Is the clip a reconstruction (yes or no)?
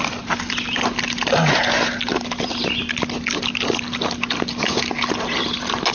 no